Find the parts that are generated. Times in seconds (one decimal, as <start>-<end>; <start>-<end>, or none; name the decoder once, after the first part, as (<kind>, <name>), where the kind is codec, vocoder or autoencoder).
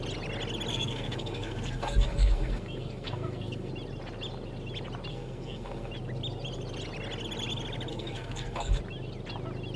0.7-3.7 (codec, SNAC); 5.1-5.9; 7.9-8.8